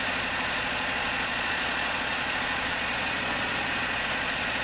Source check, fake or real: fake